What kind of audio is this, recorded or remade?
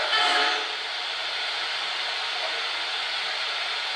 recorded